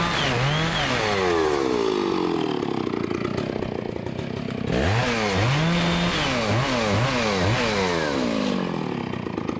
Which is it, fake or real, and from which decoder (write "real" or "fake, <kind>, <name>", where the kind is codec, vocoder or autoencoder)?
real